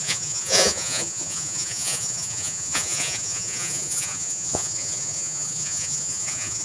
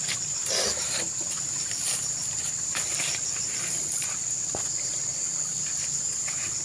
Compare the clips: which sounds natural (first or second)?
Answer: second